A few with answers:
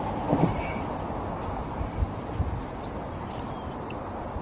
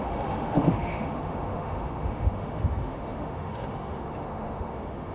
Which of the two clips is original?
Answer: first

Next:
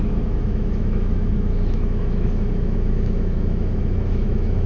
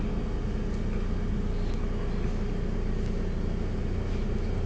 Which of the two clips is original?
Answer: second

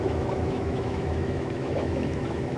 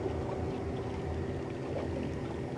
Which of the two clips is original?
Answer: second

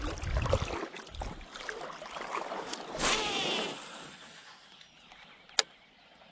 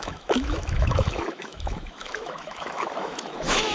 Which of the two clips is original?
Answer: first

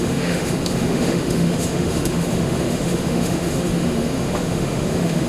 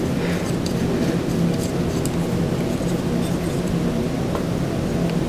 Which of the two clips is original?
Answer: second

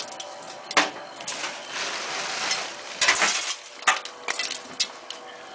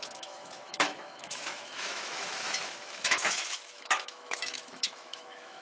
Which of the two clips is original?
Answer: first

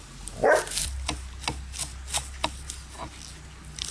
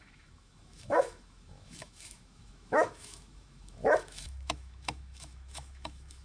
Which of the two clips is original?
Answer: first